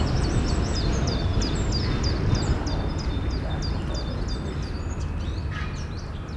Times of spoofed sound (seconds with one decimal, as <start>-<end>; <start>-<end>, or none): none